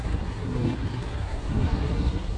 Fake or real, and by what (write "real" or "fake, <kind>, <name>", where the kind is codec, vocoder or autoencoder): fake, codec, SNAC